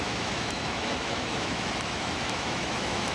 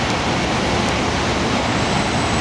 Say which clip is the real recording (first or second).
second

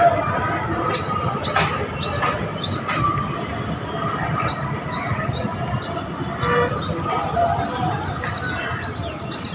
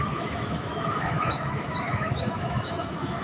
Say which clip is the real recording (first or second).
first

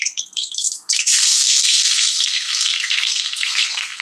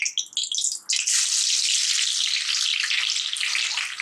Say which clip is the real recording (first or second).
second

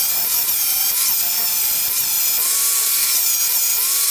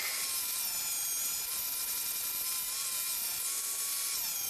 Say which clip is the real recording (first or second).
second